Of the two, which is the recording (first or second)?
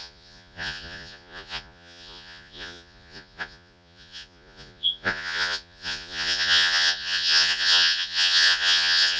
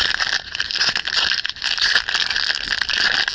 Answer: second